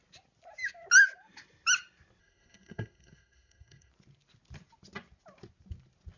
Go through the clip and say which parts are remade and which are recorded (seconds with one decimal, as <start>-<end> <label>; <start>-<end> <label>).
0.0-2.2 recorded; 2.2-3.9 remade; 3.9-6.2 recorded